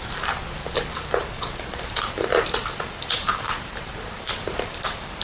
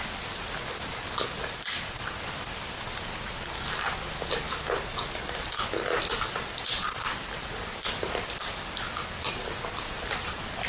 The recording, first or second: second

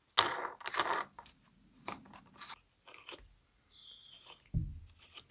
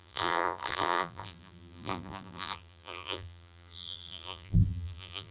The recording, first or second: first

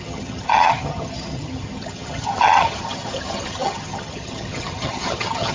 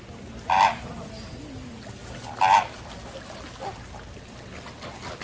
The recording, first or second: second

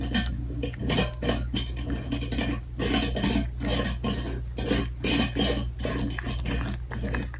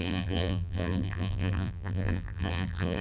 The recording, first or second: first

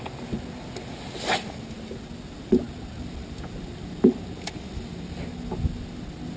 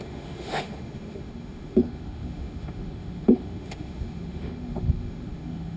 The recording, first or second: first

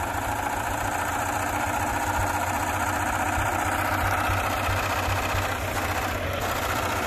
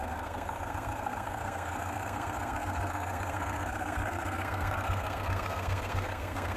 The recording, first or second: first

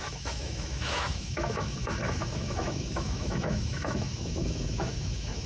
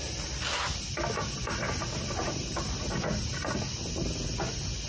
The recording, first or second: second